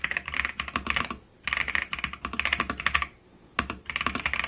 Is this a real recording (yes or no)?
yes